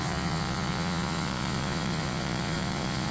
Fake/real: fake